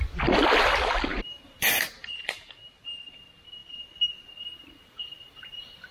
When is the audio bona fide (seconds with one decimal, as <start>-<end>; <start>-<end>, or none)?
0.0-5.9